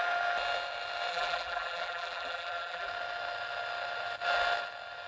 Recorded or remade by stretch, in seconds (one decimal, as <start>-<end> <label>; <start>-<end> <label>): 0.0-1.1 recorded; 1.1-2.9 remade; 2.9-5.1 recorded